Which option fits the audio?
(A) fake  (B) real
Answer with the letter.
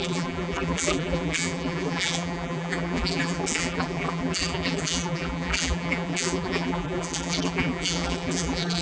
A